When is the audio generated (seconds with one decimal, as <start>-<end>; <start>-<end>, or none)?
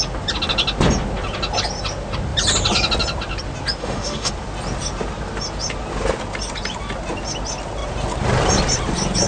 3.8-4.3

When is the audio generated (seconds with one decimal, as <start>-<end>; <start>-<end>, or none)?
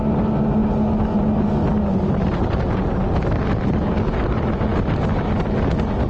none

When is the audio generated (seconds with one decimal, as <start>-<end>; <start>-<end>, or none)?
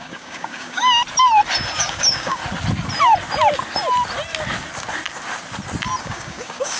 0.0-0.8; 1.8-2.4; 6.0-6.8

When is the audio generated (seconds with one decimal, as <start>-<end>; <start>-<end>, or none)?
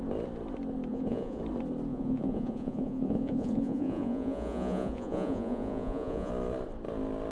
0.9-1.4; 1.9-6.3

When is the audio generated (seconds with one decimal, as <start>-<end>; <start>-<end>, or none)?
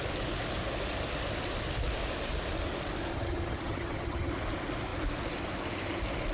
3.1-4.3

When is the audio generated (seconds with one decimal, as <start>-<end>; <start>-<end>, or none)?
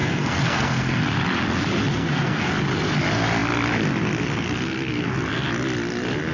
0.0-1.0; 1.9-2.5